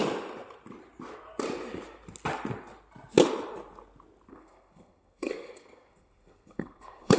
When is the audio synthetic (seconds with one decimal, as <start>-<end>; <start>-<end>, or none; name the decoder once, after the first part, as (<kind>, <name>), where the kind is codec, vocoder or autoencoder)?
4.3-7.2 (codec, SNAC)